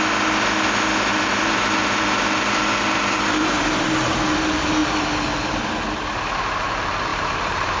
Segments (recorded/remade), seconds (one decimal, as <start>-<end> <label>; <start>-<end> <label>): 0.0-1.1 recorded; 1.1-4.2 remade; 4.2-7.1 recorded; 7.1-7.8 remade